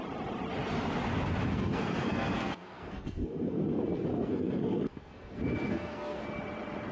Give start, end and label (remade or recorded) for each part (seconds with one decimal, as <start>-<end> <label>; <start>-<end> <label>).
0.0-1.5 recorded; 1.5-3.6 remade; 3.6-4.1 recorded; 4.1-6.2 remade; 6.2-6.9 recorded